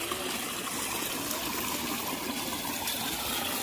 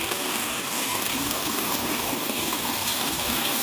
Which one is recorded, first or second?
first